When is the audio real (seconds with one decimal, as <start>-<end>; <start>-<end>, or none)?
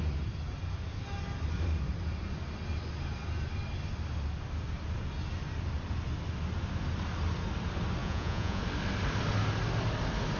0.0-8.0; 8.6-10.4